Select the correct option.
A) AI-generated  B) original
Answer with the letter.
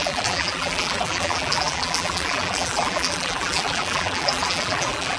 A